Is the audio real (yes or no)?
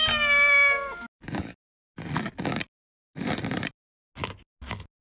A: yes